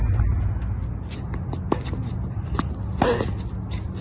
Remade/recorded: recorded